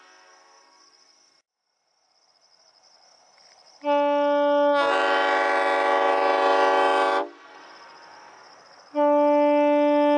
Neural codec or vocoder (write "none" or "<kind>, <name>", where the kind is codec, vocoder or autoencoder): none